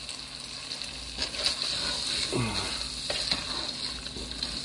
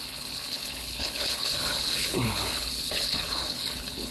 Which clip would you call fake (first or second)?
second